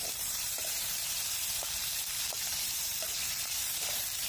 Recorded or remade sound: remade